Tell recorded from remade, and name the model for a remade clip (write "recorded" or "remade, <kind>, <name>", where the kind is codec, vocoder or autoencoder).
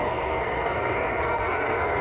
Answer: remade, codec, SNAC